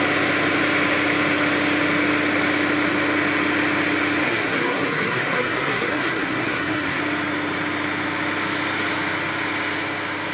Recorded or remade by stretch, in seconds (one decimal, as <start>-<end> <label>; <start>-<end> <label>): 0.0-4.2 recorded; 4.2-7.0 remade; 7.0-10.3 recorded